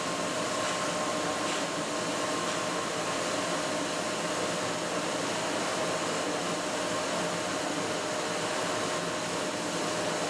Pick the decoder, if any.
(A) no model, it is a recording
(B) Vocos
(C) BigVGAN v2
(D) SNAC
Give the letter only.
A